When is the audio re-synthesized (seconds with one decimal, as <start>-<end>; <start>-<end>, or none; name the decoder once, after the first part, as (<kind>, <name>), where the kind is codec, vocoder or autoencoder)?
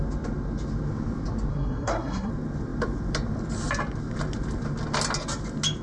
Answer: 1.5-2.3 (codec, SNAC)